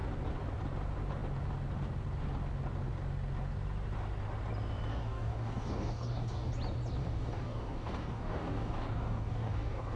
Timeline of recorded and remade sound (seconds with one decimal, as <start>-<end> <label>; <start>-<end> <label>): 0.0-4.9 recorded; 4.9-6.5 remade; 6.5-7.0 recorded; 7.0-10.0 remade